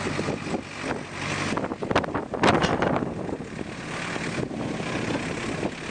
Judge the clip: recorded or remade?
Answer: recorded